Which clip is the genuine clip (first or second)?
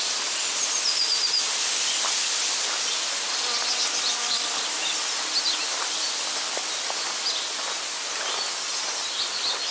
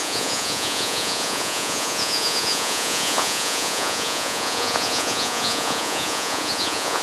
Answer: first